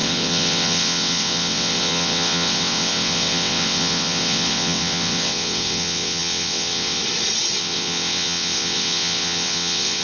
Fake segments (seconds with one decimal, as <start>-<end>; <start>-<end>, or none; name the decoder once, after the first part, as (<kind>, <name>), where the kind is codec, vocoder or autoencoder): 0.0-7.0 (vocoder, WaveNeXt); 7.6-10.0